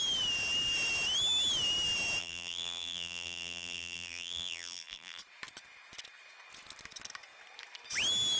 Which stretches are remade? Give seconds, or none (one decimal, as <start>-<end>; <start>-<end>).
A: 2.2-5.2

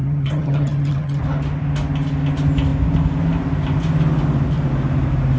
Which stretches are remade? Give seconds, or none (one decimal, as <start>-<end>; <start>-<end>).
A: 0.0-1.2

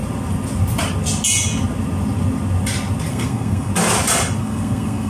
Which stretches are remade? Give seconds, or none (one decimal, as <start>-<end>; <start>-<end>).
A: 3.1-3.7; 4.4-5.1

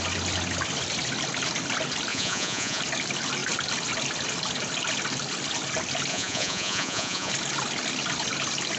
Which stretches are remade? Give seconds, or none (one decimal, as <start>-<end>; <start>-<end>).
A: 2.1-2.8; 6.1-7.3

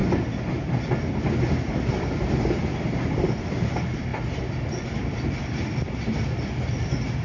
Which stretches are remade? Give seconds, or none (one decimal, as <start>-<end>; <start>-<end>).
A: none

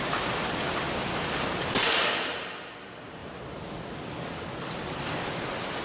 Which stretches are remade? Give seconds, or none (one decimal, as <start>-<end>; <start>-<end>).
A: none